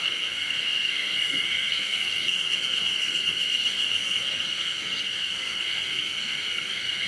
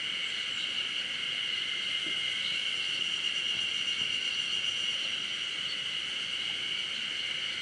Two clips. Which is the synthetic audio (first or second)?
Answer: first